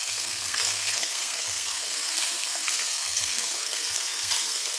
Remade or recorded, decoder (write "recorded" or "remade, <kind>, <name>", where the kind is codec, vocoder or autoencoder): remade, codec, SNAC